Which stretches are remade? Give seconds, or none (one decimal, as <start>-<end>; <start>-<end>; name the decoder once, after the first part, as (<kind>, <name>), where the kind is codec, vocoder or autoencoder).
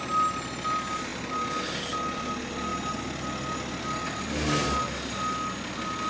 none